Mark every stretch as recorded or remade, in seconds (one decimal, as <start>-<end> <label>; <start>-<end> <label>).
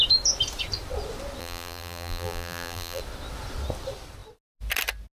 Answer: 0.0-1.4 recorded; 1.4-3.0 remade; 3.0-5.2 recorded